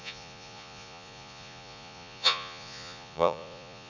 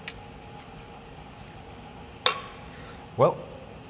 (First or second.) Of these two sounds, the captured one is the second